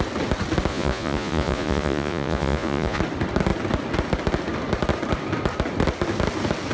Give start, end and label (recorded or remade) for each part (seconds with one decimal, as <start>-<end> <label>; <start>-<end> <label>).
0.0-0.7 recorded; 0.7-3.0 remade; 3.0-6.7 recorded